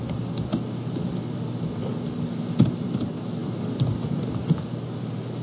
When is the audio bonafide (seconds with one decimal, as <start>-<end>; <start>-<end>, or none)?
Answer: 0.0-3.4; 4.5-5.4